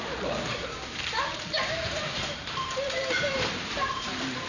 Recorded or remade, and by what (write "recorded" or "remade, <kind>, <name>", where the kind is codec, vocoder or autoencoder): remade, vocoder, BigVGAN v2